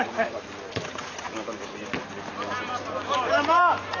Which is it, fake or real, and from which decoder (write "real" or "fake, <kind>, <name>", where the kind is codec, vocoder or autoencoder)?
real